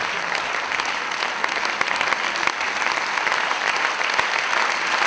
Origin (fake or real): real